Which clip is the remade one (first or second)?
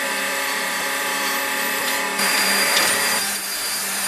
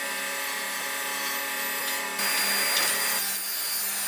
first